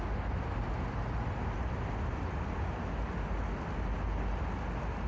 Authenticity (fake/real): real